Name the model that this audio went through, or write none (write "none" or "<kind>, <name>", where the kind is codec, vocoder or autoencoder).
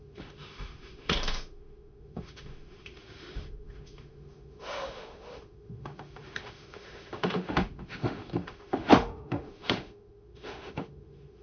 autoencoder, DAC-VAE